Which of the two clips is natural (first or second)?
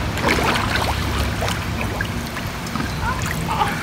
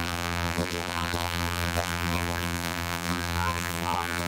first